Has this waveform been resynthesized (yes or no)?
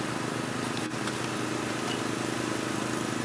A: no